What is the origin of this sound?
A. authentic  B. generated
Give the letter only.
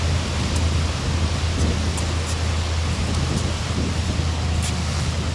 A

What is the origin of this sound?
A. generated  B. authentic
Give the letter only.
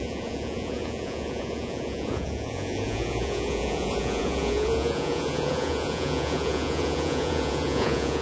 A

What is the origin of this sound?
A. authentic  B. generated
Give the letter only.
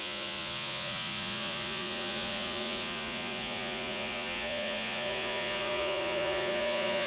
B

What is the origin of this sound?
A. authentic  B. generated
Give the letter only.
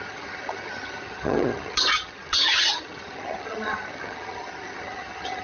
B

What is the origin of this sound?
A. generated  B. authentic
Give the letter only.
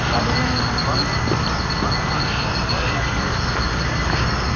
B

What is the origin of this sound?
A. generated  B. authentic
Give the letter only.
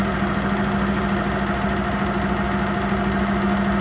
B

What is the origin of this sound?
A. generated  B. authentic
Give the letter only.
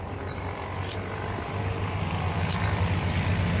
B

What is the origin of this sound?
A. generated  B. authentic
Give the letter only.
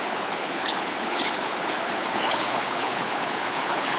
A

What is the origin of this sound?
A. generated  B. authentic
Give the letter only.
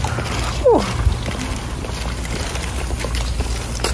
B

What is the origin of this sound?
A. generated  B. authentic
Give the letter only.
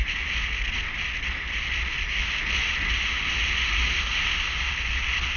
B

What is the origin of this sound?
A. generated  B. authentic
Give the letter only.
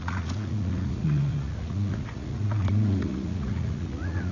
A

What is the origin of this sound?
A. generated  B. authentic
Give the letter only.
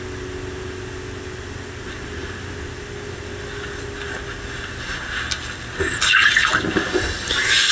B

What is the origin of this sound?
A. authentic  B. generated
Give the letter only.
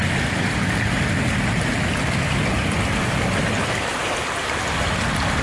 A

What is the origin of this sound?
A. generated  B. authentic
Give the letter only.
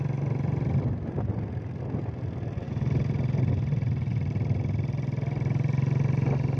B